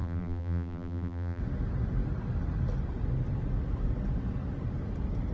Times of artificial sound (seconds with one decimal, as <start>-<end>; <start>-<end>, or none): 0.0-1.4

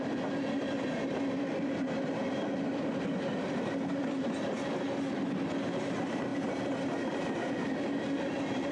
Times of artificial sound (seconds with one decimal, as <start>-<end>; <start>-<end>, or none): 0.0-8.7

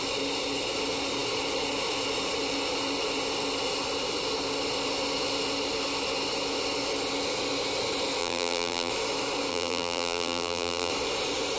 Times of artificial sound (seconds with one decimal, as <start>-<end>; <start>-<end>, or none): 8.2-8.9; 9.5-10.9

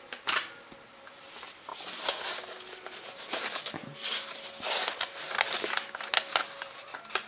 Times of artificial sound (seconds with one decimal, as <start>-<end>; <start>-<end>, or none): 1.7-6.1